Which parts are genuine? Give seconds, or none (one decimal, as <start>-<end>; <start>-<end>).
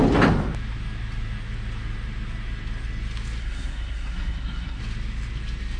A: 0.0-3.4; 4.8-5.8